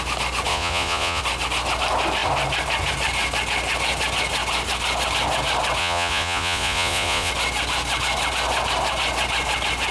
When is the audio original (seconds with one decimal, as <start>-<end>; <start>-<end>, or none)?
0.0-0.5; 1.2-5.8; 7.3-9.9